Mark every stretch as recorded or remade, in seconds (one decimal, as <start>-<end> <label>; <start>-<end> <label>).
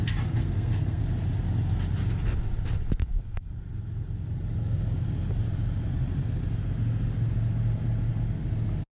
0.0-0.4 recorded; 0.4-1.0 remade; 1.0-3.0 recorded; 3.0-3.5 remade; 3.5-8.9 recorded